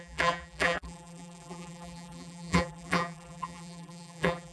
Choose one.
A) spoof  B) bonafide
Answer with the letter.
A